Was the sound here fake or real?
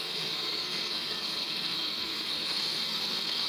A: fake